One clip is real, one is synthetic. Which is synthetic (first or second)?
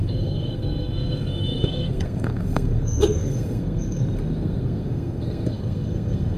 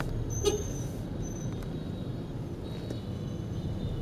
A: first